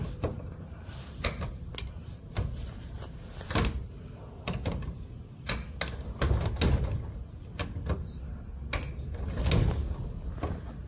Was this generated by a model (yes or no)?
no